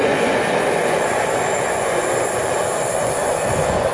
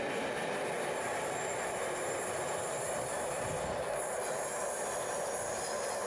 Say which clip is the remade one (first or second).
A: first